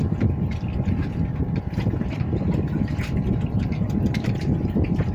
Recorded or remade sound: remade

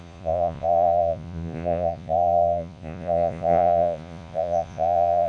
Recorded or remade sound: remade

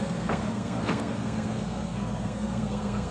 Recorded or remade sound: remade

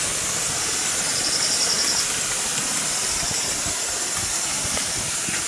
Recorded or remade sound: recorded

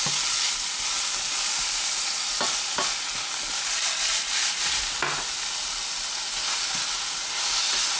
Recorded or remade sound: recorded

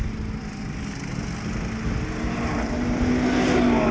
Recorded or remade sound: recorded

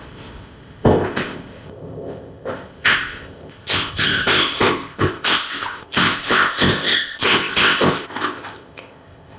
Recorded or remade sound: remade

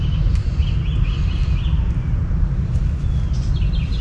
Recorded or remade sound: recorded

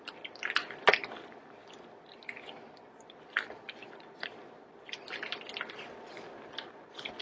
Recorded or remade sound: recorded